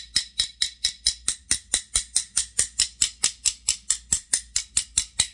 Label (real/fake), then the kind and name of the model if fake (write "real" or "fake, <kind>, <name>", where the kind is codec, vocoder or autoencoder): real